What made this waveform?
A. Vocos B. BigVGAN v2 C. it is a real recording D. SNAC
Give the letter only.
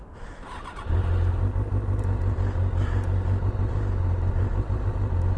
C